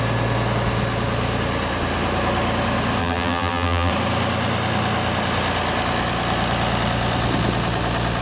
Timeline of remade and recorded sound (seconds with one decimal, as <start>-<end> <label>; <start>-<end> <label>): 0.0-3.0 recorded; 3.0-3.9 remade; 3.9-8.2 recorded